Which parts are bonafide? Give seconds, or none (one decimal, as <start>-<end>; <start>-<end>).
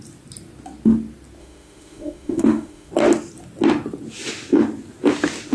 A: 0.0-1.4; 2.9-5.5